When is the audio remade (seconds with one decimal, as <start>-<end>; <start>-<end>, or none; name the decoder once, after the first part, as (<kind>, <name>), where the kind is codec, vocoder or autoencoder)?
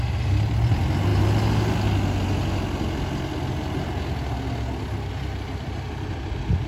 none